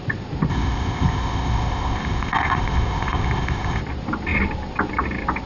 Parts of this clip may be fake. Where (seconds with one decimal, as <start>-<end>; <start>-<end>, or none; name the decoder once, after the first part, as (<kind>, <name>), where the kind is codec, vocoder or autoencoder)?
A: 0.5-3.8 (codec, ZipCodec)